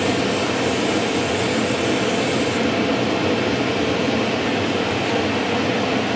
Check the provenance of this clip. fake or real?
real